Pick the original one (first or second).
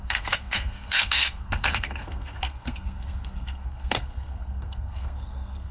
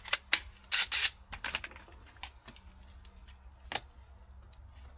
second